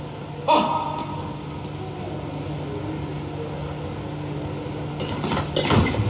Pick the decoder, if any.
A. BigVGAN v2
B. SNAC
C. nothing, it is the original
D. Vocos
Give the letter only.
C